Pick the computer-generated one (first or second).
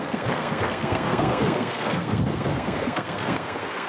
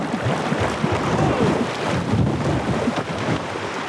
first